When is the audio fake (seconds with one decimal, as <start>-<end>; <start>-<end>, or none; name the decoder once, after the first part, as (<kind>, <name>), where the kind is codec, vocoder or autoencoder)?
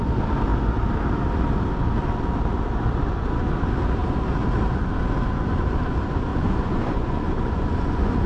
6.3-8.3 (vocoder, Vocos)